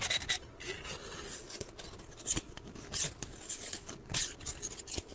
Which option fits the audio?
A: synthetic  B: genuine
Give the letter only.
B